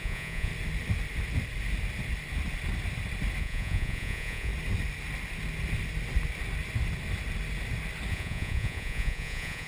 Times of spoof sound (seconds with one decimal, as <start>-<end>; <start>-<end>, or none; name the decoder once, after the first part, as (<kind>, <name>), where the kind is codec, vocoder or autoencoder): 0.0-0.5 (vocoder, Vocos); 3.4-4.5; 8.1-9.7